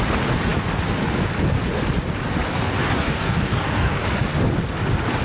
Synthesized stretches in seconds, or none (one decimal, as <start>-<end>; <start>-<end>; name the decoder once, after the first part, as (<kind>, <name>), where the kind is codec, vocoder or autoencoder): 2.5-4.0 (codec, DAC)